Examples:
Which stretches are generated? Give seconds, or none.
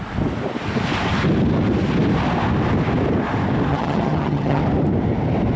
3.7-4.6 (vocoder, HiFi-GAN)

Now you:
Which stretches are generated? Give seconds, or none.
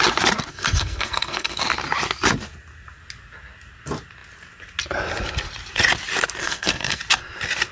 0.5-1.6 (codec, SNAC); 6.4-7.0